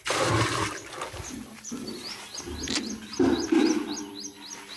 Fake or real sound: real